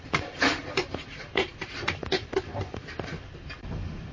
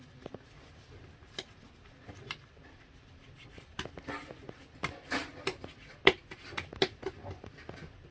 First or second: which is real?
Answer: second